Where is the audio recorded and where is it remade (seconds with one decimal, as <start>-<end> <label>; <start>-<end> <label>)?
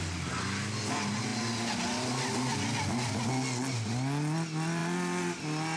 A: 0.0-5.8 recorded